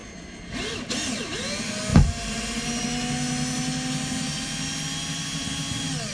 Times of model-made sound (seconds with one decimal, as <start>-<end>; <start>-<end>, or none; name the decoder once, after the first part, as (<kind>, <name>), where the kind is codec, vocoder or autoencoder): 1.9-2.8 (vocoder, BigVGAN v2)